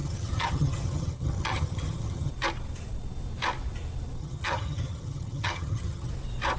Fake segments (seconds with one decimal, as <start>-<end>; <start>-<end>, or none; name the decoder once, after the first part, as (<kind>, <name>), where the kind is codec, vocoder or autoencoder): 0.0-2.3 (vocoder, HiFi-GAN); 4.2-6.1